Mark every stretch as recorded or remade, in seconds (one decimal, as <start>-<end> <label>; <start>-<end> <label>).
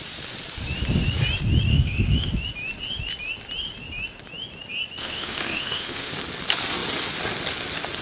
0.0-1.7 recorded; 1.7-2.3 remade; 2.3-5.0 recorded; 5.0-6.1 remade; 6.1-8.0 recorded